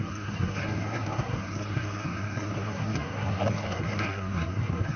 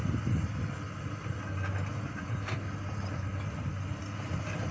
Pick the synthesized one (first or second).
first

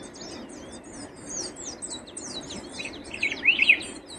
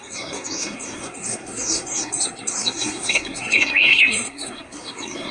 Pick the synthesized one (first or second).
second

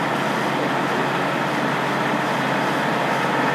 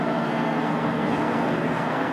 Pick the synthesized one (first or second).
second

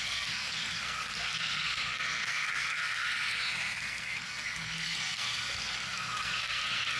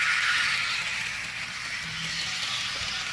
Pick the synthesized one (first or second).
first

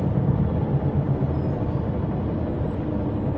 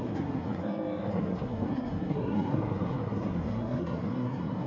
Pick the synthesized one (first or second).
second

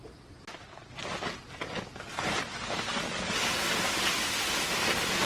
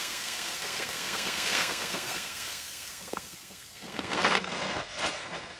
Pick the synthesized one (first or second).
second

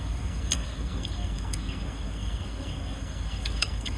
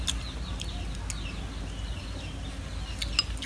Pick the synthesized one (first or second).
first